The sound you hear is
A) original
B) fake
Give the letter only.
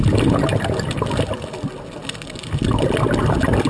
A